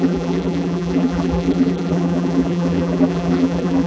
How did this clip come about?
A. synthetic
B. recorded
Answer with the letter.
A